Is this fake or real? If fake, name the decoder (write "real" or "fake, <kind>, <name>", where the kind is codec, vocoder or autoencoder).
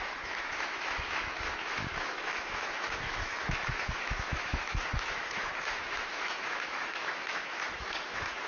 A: fake, autoencoder, DAC-VAE